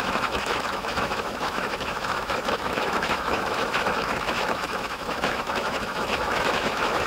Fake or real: fake